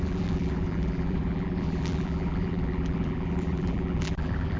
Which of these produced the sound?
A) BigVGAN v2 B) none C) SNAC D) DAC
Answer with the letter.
A